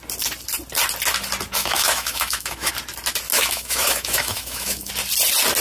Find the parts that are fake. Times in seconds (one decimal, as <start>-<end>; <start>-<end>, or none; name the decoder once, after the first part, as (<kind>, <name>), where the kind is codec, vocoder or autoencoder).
1.6-2.7 (autoencoder, DAC-VAE); 3.3-4.9